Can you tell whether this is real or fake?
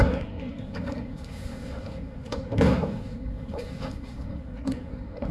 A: fake